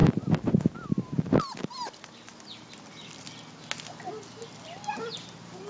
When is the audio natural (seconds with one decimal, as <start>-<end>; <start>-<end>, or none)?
0.0-5.7

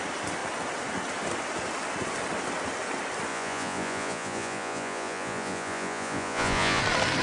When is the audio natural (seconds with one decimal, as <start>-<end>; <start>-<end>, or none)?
0.0-3.3; 6.8-7.2

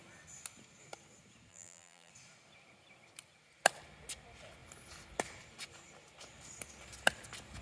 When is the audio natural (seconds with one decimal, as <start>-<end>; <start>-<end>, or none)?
0.0-1.5; 2.1-7.6